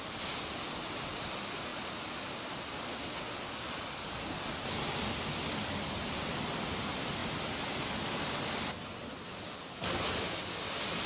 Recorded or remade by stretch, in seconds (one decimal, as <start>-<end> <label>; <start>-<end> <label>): 0.0-11.1 recorded